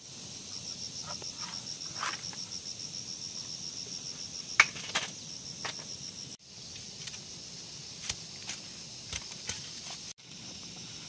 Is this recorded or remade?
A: recorded